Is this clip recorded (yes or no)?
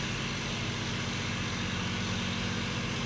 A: yes